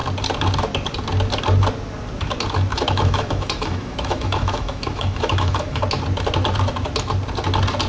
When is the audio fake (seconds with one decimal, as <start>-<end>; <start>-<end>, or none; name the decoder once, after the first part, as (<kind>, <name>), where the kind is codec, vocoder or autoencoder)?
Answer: 2.7-5.8 (autoencoder, DAC-VAE)